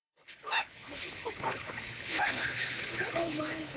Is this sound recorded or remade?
remade